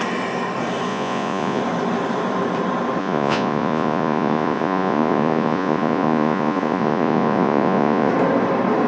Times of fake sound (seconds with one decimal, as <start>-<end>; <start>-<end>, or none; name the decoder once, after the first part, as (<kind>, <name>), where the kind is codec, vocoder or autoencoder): 0.9-1.6 (vocoder, Vocos); 3.0-8.1